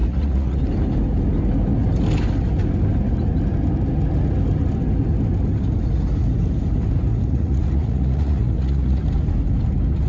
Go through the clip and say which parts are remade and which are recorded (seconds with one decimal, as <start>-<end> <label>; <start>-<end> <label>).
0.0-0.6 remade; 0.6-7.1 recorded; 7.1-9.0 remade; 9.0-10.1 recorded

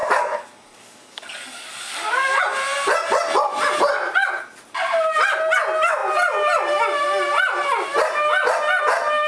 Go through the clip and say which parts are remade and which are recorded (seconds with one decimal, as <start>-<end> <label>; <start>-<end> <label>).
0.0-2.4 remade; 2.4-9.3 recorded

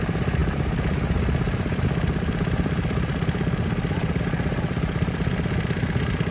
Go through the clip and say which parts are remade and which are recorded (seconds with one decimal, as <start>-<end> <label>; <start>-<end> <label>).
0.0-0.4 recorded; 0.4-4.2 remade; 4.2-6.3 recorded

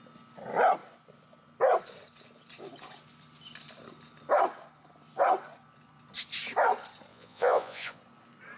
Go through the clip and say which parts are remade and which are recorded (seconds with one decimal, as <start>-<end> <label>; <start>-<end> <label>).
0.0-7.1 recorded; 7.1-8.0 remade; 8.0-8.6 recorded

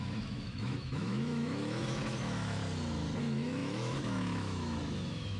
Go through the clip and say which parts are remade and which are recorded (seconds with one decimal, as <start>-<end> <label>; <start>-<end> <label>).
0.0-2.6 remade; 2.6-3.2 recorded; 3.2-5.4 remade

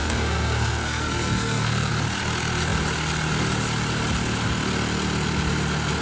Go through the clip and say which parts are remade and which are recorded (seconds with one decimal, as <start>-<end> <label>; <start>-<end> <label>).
0.0-1.9 remade; 1.9-6.0 recorded